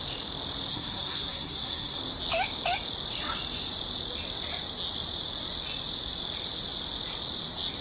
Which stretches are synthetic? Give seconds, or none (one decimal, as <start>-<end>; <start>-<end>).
0.7-2.0